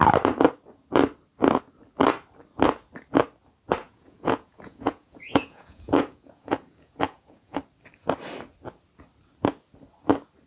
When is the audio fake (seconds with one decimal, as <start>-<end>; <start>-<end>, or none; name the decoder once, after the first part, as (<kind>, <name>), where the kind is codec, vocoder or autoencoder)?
3.8-7.6 (vocoder, Vocos)

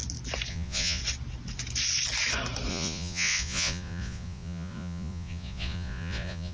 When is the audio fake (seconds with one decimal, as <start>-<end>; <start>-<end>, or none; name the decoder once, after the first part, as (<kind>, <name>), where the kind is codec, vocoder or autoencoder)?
0.5-1.0 (vocoder, Vocos); 2.7-6.5